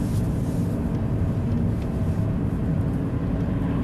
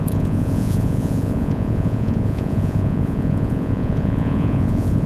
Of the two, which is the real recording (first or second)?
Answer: first